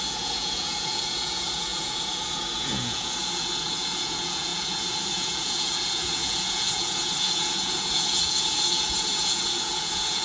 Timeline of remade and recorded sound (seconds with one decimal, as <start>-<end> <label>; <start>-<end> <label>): 0.0-10.2 remade